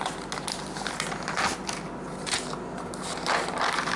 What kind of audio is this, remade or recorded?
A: recorded